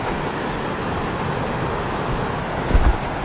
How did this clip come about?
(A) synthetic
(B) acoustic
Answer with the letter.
B